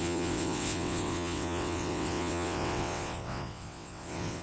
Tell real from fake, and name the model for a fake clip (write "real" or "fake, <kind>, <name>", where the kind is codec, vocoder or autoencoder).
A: fake, vocoder, WaveNeXt